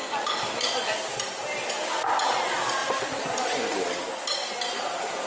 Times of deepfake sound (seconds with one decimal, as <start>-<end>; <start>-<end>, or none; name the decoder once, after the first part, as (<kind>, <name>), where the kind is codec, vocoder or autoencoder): none